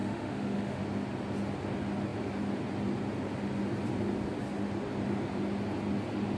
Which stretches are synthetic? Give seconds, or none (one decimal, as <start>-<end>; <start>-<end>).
0.0-0.8